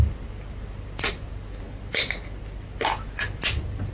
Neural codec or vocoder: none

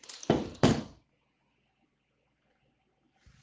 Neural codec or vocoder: none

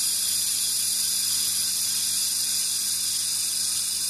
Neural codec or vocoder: none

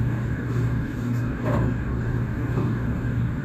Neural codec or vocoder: codec, DAC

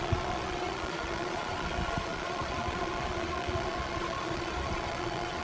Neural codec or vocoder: vocoder, Vocos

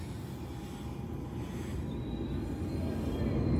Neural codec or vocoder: none